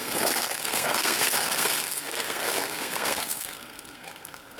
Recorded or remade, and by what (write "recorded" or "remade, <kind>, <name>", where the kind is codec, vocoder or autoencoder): remade, codec, SNAC